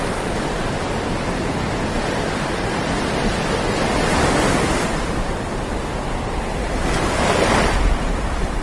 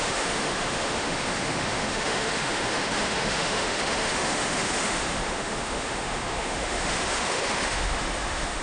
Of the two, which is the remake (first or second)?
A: second